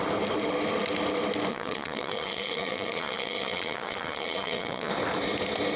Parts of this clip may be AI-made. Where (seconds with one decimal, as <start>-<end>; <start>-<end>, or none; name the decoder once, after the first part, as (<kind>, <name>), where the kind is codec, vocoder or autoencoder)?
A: 1.5-4.9 (vocoder, Vocos)